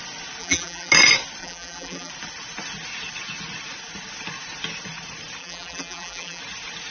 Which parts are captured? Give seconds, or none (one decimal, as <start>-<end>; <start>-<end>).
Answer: 0.0-0.4; 0.9-1.4; 2.1-5.4; 6.4-6.9